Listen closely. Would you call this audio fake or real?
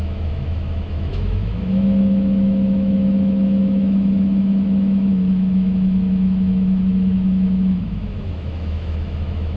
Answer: fake